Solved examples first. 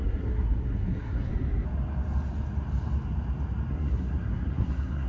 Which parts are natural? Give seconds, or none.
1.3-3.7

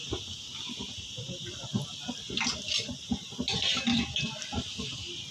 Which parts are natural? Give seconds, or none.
0.0-5.3

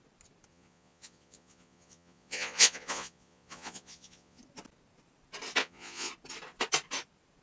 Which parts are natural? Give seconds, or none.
0.0-0.5; 4.4-5.6; 6.1-7.4

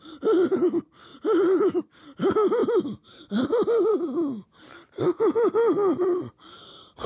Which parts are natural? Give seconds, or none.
0.0-1.1; 1.8-7.1

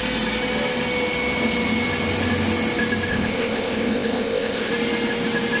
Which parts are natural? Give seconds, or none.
0.0-3.1; 4.7-5.6